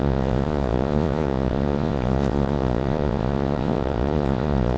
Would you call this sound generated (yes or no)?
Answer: yes